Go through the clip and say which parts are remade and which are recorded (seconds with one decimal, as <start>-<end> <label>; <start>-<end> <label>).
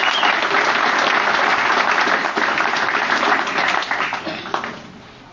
0.0-5.3 recorded